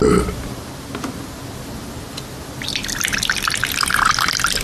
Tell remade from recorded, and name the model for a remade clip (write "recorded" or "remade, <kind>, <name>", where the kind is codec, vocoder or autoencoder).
recorded